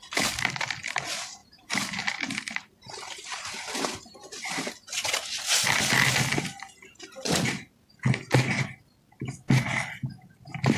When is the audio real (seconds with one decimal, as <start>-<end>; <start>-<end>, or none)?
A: 0.0-1.4; 4.7-10.8